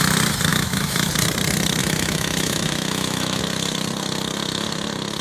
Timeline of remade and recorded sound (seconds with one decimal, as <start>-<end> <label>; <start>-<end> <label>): 0.0-0.5 recorded; 0.5-1.1 remade; 1.1-1.8 recorded; 1.8-3.4 remade; 3.4-5.2 recorded